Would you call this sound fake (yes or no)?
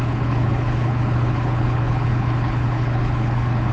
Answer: yes